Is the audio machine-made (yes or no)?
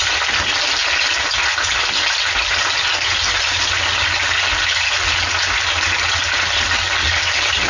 no